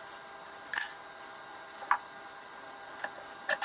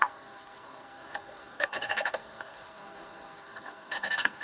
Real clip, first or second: first